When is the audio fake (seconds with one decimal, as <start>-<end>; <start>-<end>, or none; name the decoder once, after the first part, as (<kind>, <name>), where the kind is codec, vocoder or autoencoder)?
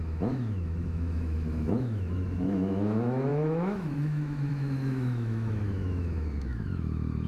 0.0-7.3 (autoencoder, DAC-VAE)